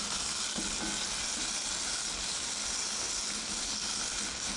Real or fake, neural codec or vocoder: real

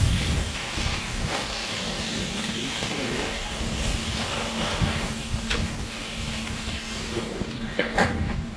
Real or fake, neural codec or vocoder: fake, codec, DAC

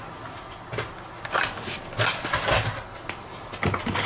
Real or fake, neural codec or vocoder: real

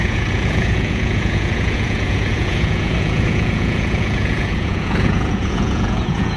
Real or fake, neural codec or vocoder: fake, vocoder, Vocos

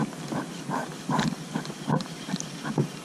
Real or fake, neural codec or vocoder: real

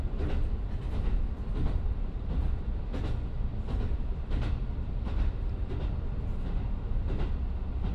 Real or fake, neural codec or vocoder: real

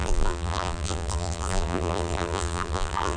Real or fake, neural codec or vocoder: fake, vocoder, BigVGAN v2